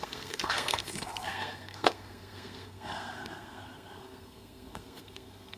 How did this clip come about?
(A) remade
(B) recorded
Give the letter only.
A